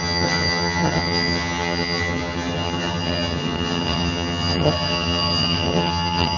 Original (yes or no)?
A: no